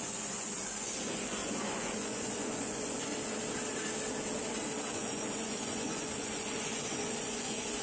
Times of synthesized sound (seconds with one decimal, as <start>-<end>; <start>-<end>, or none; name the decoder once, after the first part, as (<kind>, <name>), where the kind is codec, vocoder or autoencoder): 0.0-3.1 (vocoder, Vocos); 4.9-7.8